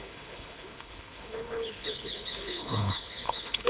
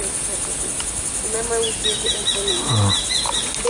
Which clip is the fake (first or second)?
first